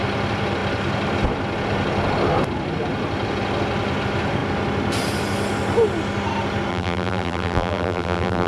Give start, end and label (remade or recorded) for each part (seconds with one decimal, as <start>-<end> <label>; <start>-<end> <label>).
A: 0.0-6.7 recorded; 6.7-8.5 remade